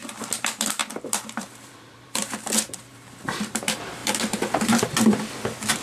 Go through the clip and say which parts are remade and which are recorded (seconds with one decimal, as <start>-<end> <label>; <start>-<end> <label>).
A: 0.0-4.0 remade; 4.0-4.6 recorded; 4.6-5.8 remade